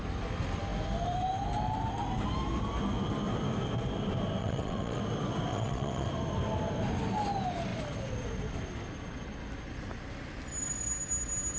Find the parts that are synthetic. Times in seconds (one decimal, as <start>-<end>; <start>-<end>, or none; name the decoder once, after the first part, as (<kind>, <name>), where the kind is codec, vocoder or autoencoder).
4.4-5.0 (vocoder, WaveNeXt); 5.5-6.1